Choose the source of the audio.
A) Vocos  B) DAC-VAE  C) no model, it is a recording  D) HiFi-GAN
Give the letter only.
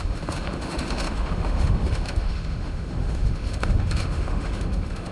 B